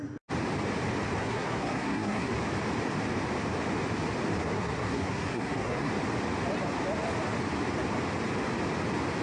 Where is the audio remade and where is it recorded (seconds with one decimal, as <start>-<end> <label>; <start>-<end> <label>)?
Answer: 0.0-1.2 recorded; 1.2-2.3 remade; 2.3-4.4 recorded; 4.4-5.9 remade; 5.9-9.2 recorded